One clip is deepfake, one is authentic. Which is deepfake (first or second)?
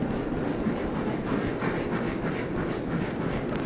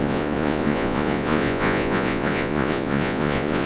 second